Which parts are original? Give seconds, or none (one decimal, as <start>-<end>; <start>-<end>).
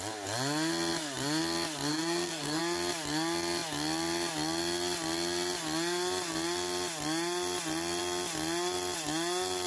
0.0-1.9; 2.6-9.7